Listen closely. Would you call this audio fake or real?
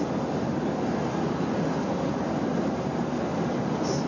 real